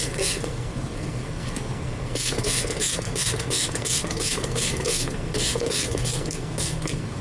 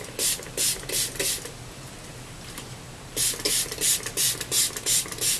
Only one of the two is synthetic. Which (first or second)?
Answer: first